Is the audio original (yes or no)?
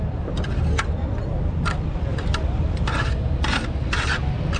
no